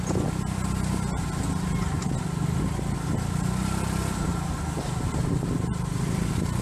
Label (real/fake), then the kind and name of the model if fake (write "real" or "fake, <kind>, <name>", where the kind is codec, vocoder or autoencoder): real